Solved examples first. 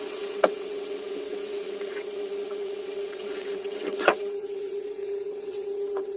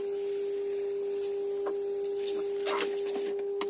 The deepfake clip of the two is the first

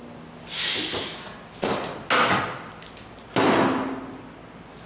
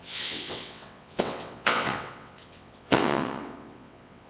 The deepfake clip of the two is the second